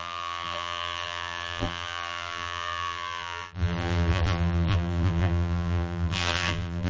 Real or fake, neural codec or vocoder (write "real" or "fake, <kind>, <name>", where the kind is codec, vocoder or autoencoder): fake, vocoder, BigVGAN v2